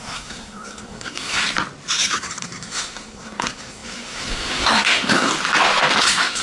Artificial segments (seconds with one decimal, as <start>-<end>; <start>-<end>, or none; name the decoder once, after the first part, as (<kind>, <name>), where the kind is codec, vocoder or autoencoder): 0.0-1.4 (codec, SNAC); 2.0-5.3; 6.0-6.4

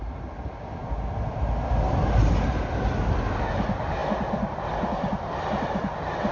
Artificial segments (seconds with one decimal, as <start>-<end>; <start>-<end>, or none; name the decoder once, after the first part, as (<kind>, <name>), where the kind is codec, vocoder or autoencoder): none

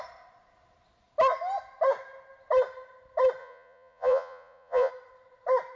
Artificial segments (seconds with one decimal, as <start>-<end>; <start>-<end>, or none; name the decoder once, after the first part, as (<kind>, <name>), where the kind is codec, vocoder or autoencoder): 3.4-4.9 (vocoder, Vocos)

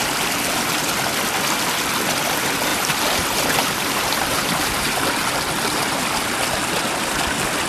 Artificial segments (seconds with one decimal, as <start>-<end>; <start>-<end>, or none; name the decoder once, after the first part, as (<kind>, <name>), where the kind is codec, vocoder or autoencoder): 2.7-5.1 (vocoder, BigVGAN v2)

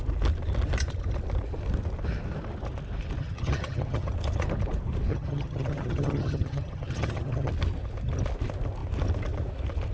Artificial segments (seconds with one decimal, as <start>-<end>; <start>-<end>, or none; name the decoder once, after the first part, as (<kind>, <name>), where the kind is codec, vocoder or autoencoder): 3.2-4.1 (vocoder, HiFi-GAN); 5.1-7.5

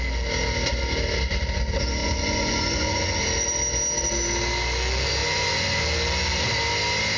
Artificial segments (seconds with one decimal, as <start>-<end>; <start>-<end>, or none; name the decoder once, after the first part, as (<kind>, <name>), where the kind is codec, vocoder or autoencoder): 2.0-3.2 (vocoder, Vocos); 5.2-5.8

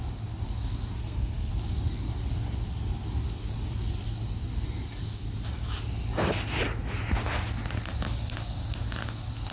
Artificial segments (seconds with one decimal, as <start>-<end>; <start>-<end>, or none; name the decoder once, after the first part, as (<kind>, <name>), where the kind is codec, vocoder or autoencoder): 1.0-1.5 (codec, SNAC)